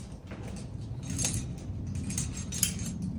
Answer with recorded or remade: recorded